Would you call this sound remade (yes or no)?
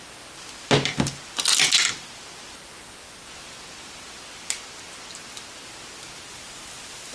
no